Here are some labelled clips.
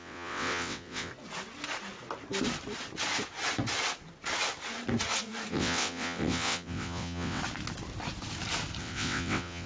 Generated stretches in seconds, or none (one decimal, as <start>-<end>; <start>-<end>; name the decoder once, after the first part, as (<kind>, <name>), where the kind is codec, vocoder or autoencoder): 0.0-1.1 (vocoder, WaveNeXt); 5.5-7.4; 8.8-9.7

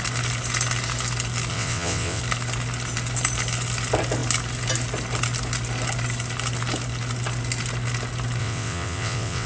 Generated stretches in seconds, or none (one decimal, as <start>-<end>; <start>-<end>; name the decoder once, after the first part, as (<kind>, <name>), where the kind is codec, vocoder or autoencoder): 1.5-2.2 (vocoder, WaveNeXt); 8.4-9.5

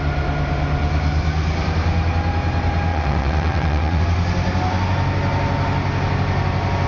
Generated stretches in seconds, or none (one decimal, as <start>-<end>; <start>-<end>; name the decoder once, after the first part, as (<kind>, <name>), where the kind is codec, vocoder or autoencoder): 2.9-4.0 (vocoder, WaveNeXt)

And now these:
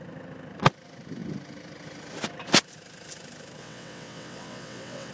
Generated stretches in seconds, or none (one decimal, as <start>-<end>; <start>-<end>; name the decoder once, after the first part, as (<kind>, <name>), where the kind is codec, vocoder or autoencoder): 3.6-5.1 (vocoder, WaveNeXt)

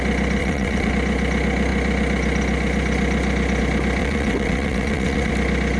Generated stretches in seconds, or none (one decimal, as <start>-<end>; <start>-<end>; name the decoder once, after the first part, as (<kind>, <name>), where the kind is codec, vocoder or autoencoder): 0.4-0.9 (vocoder, WaveNeXt); 4.0-5.3

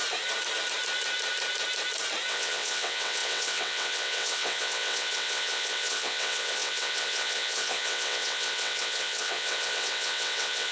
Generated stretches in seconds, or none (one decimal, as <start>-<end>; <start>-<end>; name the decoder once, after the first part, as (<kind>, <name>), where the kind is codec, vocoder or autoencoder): 2.3-10.7 (vocoder, WaveNeXt)

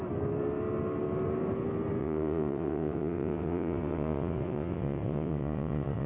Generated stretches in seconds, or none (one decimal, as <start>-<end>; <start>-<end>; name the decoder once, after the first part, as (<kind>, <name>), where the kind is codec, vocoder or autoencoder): 2.0-6.1 (vocoder, WaveNeXt)